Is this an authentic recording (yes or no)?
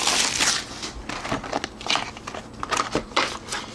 yes